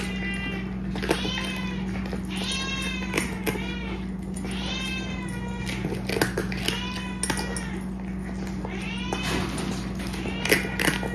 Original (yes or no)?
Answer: yes